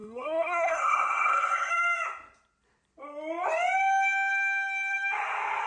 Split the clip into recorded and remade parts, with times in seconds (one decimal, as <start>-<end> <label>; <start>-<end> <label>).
0.0-1.7 remade; 1.7-5.7 recorded